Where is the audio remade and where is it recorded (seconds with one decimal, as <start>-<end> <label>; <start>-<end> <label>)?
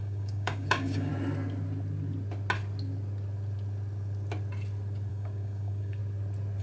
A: 0.0-1.1 remade; 1.1-5.1 recorded; 5.1-6.0 remade; 6.0-6.6 recorded